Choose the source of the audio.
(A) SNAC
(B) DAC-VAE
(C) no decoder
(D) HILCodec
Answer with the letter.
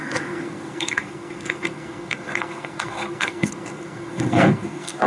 A